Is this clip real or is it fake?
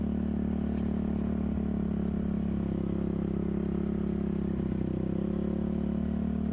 real